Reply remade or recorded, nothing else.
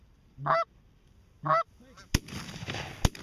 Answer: recorded